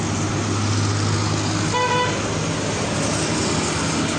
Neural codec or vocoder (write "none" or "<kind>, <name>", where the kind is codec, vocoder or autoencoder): none